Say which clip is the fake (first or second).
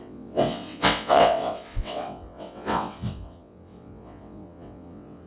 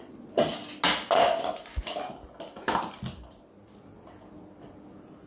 first